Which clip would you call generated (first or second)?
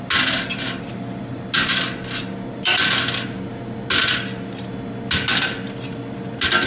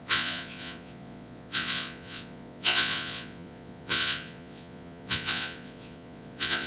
second